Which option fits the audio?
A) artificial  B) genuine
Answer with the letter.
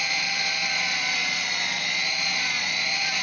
A